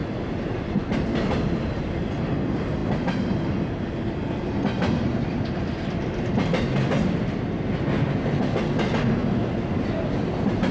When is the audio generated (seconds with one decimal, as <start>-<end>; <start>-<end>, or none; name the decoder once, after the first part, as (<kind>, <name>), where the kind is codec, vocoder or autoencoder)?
none